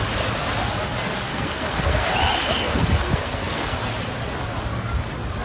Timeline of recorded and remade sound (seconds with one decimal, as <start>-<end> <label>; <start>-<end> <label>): 0.0-1.3 recorded; 1.3-2.1 remade; 2.1-2.5 recorded; 2.5-3.8 remade; 3.8-5.4 recorded